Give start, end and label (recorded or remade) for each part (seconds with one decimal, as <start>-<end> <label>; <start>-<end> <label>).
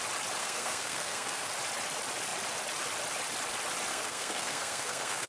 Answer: 0.0-0.4 recorded; 0.4-1.5 remade; 1.5-3.9 recorded; 3.9-5.3 remade